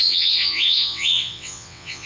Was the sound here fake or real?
fake